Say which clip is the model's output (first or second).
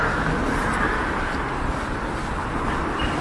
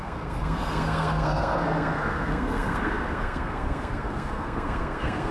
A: second